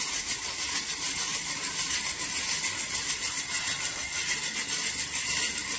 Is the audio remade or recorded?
recorded